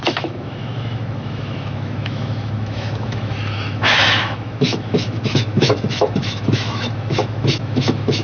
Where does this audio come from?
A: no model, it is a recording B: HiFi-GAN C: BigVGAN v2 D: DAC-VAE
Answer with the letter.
D